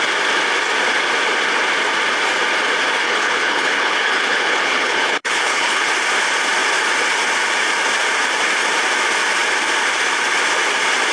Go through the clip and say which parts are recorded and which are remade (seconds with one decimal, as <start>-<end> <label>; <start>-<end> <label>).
0.0-3.0 recorded; 3.0-5.9 remade; 5.9-11.1 recorded